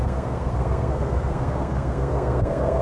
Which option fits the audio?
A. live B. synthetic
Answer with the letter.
B